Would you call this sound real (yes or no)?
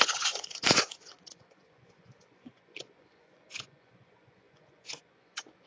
no